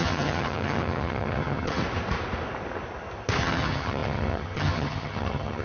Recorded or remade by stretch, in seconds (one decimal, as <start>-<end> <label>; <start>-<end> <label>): 0.0-1.8 remade; 1.8-3.4 recorded; 3.4-5.6 remade